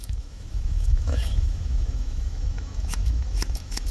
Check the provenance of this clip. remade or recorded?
remade